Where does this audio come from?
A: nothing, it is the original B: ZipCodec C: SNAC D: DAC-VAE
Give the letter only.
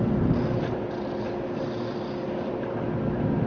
A